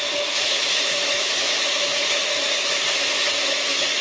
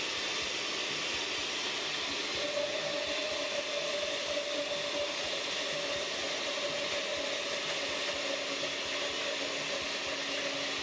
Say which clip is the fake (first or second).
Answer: first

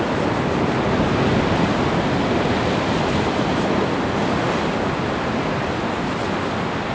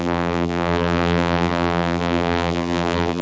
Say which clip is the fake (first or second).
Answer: second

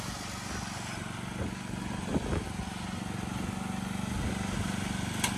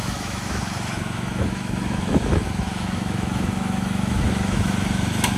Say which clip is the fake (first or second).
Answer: second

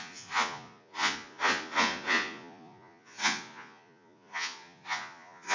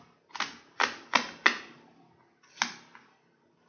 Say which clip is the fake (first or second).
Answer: first